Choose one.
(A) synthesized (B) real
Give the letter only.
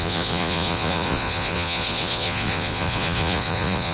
A